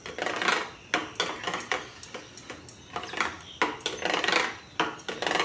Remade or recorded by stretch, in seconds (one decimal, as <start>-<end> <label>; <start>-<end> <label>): 0.0-5.4 recorded

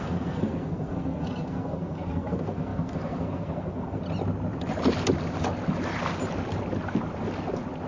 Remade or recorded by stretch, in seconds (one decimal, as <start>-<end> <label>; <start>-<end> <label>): 0.0-4.0 remade; 4.0-7.9 recorded

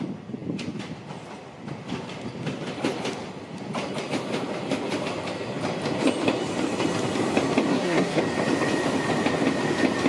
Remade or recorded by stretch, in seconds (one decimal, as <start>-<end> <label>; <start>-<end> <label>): 0.0-7.7 recorded; 7.7-8.2 remade; 8.2-10.1 recorded

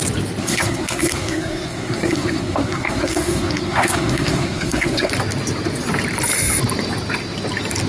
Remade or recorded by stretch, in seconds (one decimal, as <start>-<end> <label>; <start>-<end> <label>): 0.0-0.4 recorded; 0.4-5.1 remade; 5.1-7.9 recorded

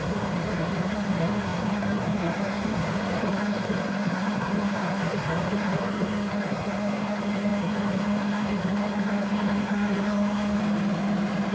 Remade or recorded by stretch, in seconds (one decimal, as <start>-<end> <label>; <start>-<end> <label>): 0.0-10.6 remade; 10.6-11.5 recorded

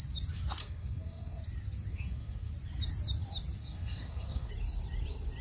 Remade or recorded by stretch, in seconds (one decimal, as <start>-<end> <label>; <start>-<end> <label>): 0.0-0.6 recorded; 0.6-1.4 remade; 1.4-1.9 recorded; 1.9-2.5 remade; 2.5-3.6 recorded; 3.6-4.5 remade; 4.5-5.4 recorded

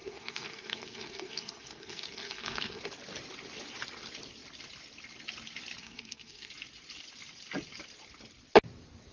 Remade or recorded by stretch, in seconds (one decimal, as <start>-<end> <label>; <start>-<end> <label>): 0.0-2.8 remade; 2.8-5.8 recorded; 5.8-6.5 remade; 6.5-9.1 recorded